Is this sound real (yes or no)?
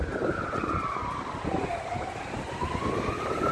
no